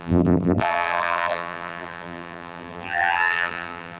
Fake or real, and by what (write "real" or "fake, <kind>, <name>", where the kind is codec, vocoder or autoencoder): fake, vocoder, BigVGAN v2